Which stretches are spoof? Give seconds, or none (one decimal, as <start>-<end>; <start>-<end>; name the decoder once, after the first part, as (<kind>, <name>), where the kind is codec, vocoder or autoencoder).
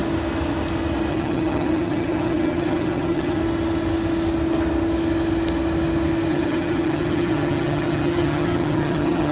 1.1-3.4 (vocoder, HiFi-GAN); 6.3-9.3